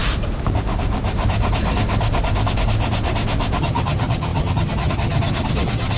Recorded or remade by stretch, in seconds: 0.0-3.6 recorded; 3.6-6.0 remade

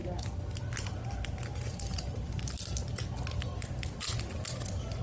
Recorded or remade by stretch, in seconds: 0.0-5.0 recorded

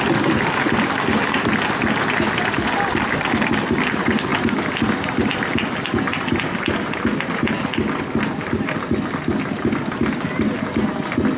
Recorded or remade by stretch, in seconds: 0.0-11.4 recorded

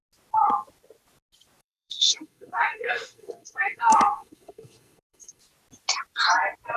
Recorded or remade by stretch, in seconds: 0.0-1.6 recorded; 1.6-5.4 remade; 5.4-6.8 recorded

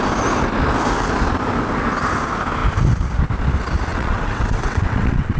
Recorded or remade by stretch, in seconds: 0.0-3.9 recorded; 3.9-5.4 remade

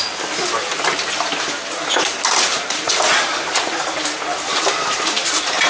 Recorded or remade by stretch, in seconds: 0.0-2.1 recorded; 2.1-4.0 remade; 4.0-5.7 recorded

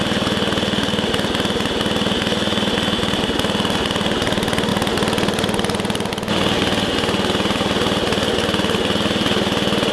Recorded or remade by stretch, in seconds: 0.0-4.7 recorded; 4.7-6.1 remade; 6.1-9.9 recorded

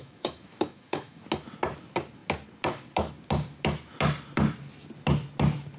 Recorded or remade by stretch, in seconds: 0.0-1.2 remade; 1.2-5.8 recorded